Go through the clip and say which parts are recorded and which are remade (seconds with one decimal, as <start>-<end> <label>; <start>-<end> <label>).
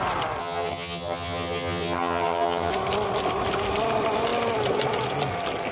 0.0-0.4 recorded; 0.4-2.7 remade; 2.7-5.7 recorded